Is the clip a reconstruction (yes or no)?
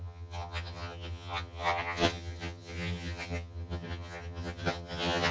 yes